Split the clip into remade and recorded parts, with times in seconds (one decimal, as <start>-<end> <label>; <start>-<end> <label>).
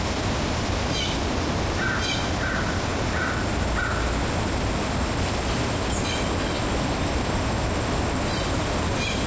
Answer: 0.0-9.3 recorded